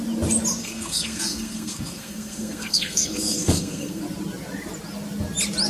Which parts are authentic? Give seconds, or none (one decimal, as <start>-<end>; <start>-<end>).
0.0-0.6; 4.0-5.7